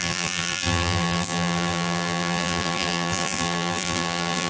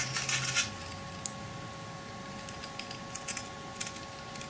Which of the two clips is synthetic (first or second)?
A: first